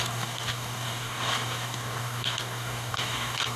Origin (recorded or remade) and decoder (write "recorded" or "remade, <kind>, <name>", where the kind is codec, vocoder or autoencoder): remade, codec, DAC